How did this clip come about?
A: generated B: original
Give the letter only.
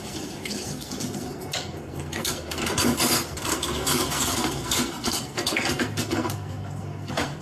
A